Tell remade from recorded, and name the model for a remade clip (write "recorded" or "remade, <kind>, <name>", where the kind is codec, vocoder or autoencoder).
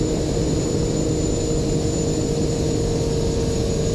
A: recorded